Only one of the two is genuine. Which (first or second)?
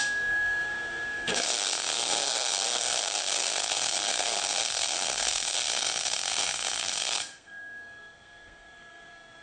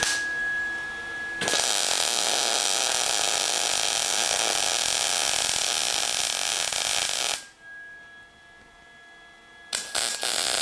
second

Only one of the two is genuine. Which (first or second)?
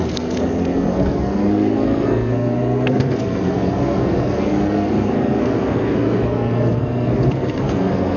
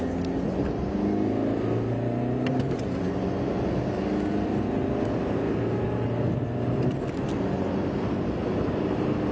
second